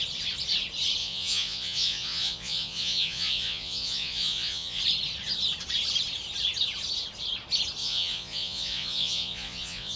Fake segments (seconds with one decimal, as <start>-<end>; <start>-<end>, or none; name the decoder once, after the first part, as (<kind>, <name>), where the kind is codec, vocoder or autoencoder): 1.0-4.8 (vocoder, Vocos); 7.8-10.0